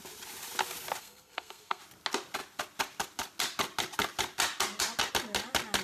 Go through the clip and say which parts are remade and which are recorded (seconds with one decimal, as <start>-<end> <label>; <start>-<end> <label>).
0.0-1.0 recorded; 1.0-1.8 remade; 1.8-5.8 recorded